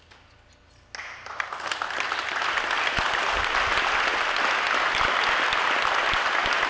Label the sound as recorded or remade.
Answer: recorded